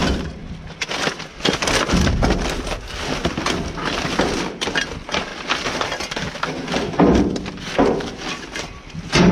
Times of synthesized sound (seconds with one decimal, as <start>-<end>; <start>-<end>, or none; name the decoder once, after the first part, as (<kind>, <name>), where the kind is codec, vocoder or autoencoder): none